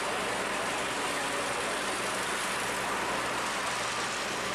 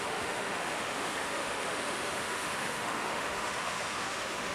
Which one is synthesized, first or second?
second